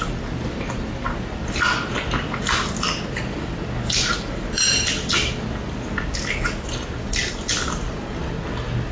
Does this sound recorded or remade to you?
recorded